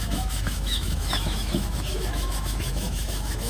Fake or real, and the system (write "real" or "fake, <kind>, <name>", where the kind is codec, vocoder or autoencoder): fake, autoencoder, DAC-VAE